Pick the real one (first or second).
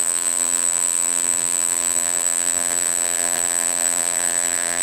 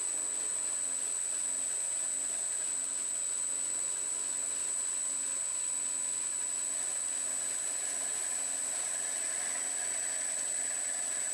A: second